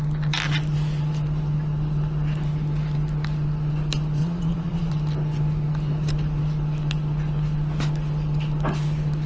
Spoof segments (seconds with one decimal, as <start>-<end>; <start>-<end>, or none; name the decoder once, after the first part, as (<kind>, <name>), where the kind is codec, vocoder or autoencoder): 4.2-4.9 (vocoder, Vocos)